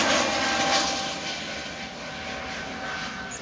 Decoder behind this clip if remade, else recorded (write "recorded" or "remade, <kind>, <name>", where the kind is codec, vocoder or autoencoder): recorded